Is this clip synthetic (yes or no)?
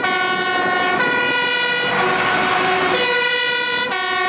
no